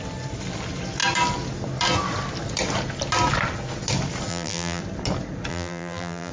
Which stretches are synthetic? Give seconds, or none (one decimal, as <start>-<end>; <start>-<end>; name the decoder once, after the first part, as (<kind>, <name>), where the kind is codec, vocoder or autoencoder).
4.3-4.8 (vocoder, BigVGAN v2); 5.5-6.3